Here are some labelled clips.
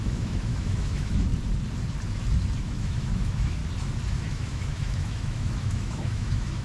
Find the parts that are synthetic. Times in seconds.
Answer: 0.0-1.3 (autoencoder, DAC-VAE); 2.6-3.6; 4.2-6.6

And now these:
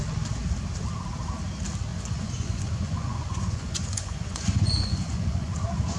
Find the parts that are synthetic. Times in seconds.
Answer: 1.9-5.5 (vocoder, Vocos)

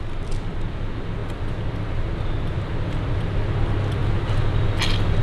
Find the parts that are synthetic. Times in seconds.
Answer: none

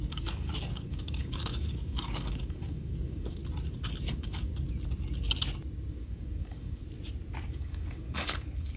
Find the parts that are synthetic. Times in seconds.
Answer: 0.0-3.4 (codec, DAC); 4.0-4.5; 5.9-6.8; 7.5-8.8

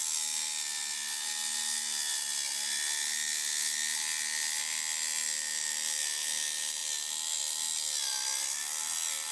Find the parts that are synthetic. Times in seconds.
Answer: none

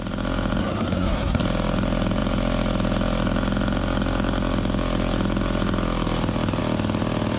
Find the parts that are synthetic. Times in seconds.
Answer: 0.6-1.4 (codec, SNAC)

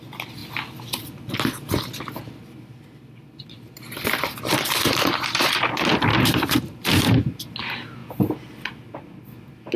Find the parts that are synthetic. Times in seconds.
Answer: 6.1-7.5 (vocoder, BigVGAN v2)

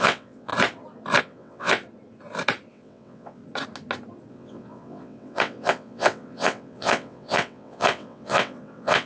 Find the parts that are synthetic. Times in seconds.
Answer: 0.0-0.5 (vocoder, WaveNeXt); 1.2-1.8; 2.7-3.4; 4.3-9.1